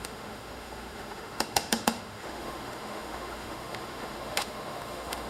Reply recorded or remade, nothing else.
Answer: remade